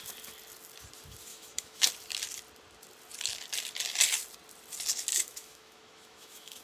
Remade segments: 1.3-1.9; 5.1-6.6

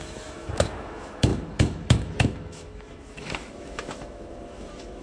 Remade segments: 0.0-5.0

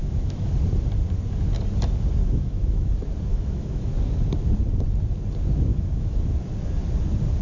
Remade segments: 0.0-0.5; 2.2-2.9; 3.3-3.9; 5.7-6.2